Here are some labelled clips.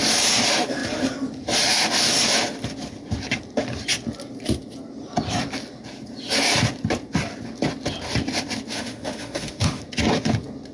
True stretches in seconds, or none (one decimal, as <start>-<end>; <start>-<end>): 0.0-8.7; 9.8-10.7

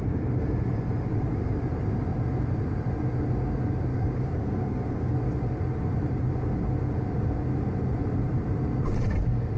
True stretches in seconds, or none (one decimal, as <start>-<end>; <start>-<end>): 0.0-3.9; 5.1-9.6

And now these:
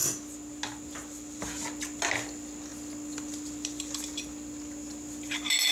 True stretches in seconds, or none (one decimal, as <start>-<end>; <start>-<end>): 0.0-5.7